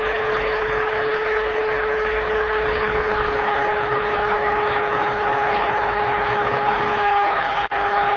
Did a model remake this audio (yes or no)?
yes